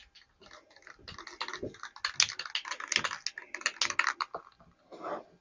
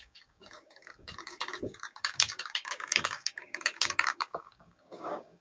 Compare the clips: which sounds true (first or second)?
first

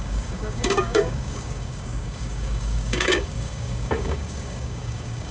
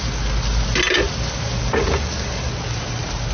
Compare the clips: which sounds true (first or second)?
second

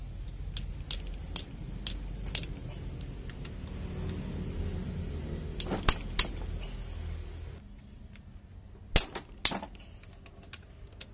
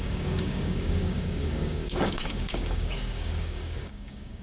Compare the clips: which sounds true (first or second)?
first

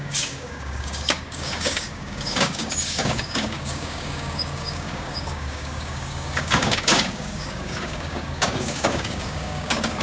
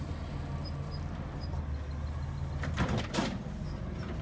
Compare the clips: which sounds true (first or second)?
second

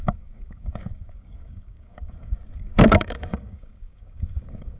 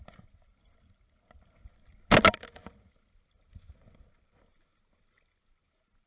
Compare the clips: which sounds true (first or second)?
second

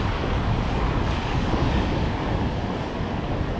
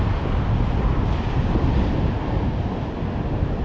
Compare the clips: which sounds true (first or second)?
second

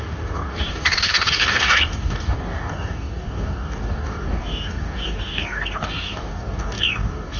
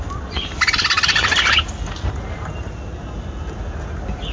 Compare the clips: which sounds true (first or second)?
second